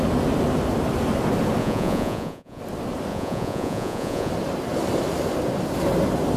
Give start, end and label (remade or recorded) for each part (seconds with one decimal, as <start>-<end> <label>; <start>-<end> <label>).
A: 0.0-1.6 recorded; 1.6-2.6 remade; 2.6-3.1 recorded; 3.1-4.3 remade; 4.3-6.4 recorded